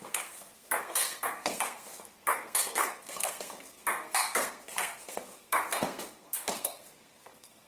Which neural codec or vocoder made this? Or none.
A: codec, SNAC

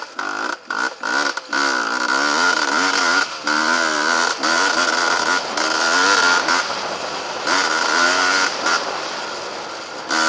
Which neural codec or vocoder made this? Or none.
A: none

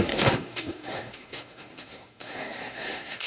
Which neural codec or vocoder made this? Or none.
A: codec, SNAC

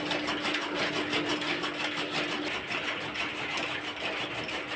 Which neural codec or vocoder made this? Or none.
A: none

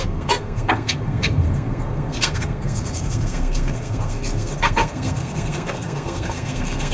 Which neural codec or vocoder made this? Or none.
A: codec, SNAC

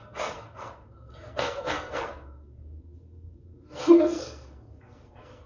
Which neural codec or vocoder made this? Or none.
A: codec, SNAC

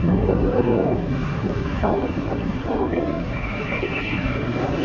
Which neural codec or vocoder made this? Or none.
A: codec, SNAC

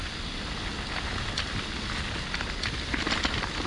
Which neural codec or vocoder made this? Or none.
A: none